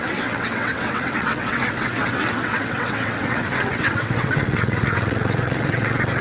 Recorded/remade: remade